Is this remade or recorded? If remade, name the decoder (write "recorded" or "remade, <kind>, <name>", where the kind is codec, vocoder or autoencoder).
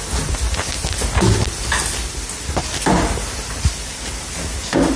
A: recorded